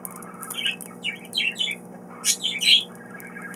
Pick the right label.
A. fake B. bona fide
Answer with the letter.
B